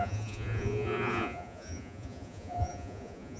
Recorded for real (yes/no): no